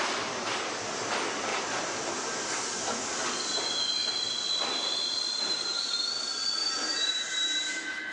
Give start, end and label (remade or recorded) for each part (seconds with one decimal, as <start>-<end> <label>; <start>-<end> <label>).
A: 0.0-6.6 recorded; 6.6-7.1 remade; 7.1-8.1 recorded